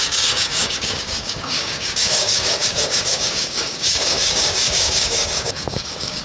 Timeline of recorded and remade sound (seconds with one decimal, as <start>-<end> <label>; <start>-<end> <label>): 0.0-6.2 remade